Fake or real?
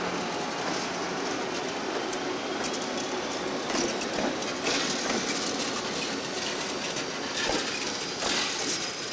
real